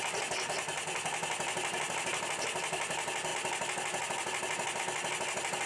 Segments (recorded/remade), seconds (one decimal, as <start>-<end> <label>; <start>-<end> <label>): 0.0-5.7 recorded